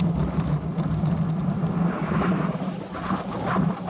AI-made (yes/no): no